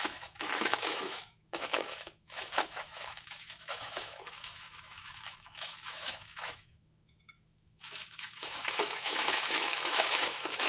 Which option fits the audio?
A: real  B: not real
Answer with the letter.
B